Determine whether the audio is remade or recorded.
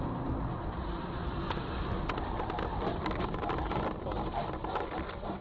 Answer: recorded